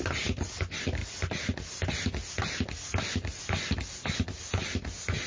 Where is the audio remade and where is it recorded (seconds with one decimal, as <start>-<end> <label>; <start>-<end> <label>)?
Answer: 0.0-5.3 recorded